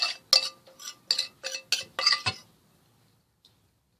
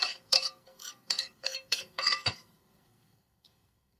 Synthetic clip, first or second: second